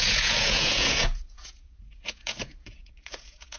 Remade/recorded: remade